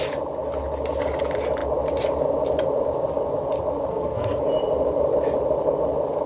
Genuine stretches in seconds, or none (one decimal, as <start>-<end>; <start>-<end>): 0.0-3.9; 4.4-6.3